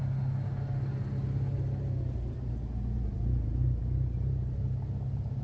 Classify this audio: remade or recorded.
recorded